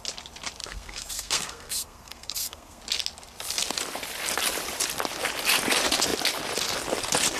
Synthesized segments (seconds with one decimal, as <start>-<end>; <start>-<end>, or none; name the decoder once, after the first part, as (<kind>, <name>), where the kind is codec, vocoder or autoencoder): 0.6-2.8 (codec, SNAC)